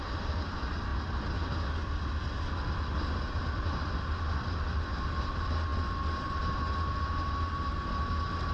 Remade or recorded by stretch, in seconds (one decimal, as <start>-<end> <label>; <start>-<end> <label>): 0.0-8.5 recorded

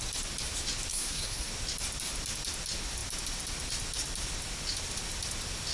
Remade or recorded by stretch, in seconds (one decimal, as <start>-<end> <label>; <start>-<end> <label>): 0.0-0.9 recorded; 0.9-1.5 remade; 1.5-5.7 recorded

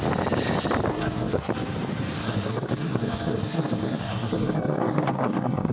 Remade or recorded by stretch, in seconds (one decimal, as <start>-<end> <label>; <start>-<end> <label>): 0.0-0.9 recorded; 0.9-1.5 remade; 1.5-2.2 recorded; 2.2-5.7 remade

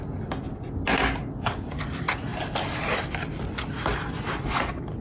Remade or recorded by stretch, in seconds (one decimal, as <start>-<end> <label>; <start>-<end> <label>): 0.0-5.0 recorded

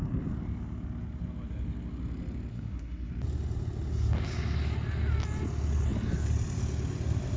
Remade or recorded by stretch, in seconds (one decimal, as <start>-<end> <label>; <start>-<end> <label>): 0.0-2.5 recorded; 2.5-3.1 remade; 3.1-7.4 recorded